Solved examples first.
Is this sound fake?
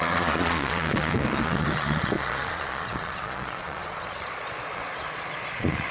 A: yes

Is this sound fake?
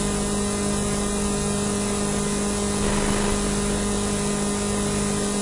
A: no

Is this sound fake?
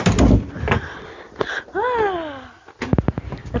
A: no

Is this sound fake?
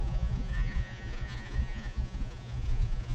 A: yes